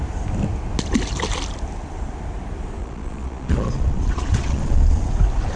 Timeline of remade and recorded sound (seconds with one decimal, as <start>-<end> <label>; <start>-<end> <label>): 0.0-2.8 recorded; 2.8-5.1 remade; 5.1-5.6 recorded